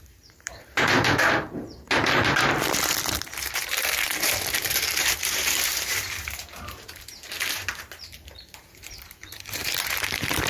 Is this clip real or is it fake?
fake